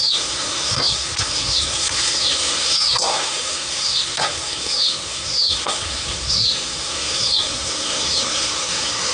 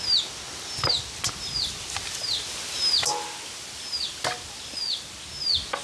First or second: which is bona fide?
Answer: second